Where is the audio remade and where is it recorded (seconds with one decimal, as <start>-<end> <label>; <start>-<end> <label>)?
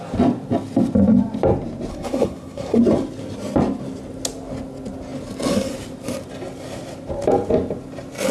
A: 0.0-1.9 recorded; 1.9-2.8 remade; 2.8-8.3 recorded